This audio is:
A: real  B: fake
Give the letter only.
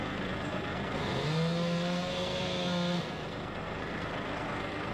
B